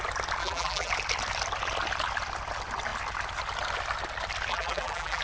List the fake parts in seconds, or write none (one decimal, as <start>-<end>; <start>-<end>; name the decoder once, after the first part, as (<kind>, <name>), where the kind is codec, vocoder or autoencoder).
0.4-0.9 (vocoder, BigVGAN v2); 4.5-5.2